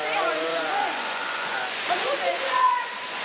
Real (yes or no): no